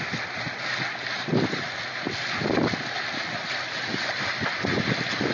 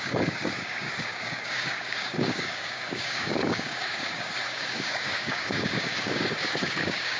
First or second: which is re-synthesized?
second